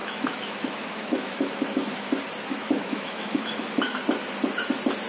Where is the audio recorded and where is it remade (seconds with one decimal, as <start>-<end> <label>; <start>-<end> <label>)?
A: 0.0-2.1 remade; 2.1-2.5 recorded; 2.5-4.0 remade; 4.0-5.1 recorded